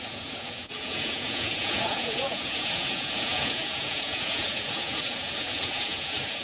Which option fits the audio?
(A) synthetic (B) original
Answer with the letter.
A